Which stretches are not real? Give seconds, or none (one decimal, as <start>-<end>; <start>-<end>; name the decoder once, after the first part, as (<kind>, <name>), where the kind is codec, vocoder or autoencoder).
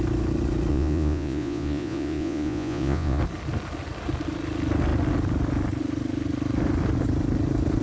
0.7-3.2 (vocoder, Vocos)